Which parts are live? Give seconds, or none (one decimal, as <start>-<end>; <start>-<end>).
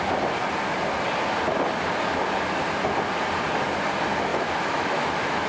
0.0-4.3